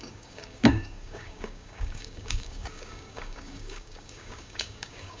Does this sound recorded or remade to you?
remade